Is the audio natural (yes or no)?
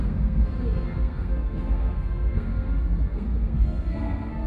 no